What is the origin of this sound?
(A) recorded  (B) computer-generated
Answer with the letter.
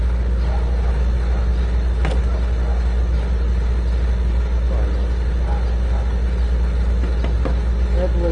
A